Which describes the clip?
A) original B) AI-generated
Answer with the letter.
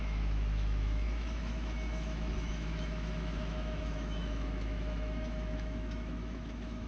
B